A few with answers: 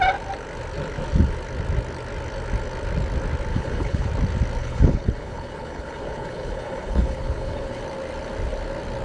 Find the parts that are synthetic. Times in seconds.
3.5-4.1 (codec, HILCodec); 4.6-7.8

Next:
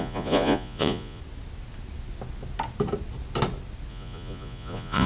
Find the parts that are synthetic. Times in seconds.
0.0-1.2 (vocoder, Vocos); 3.9-5.1

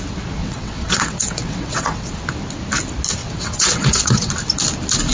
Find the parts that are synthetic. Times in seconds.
0.4-2.1 (vocoder, WaveNeXt); 3.2-4.3

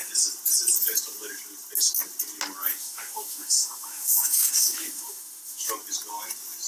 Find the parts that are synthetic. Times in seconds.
2.7-5.7 (autoencoder, DAC-VAE)

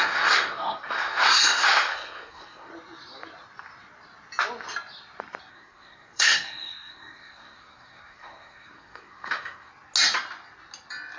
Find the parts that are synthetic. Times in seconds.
0.0-2.7 (codec, SNAC); 5.5-9.7

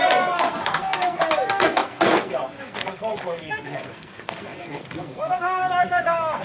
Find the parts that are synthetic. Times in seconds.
0.0-6.4 (codec, SNAC)